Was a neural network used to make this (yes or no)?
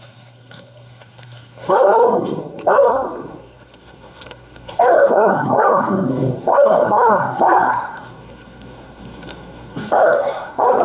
yes